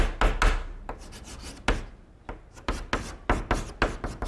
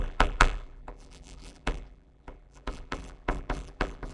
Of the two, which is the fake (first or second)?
second